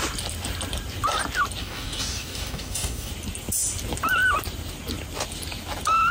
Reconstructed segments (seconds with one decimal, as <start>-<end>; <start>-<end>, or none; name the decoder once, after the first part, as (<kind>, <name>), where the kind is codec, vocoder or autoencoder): 1.6-3.1 (codec, DAC)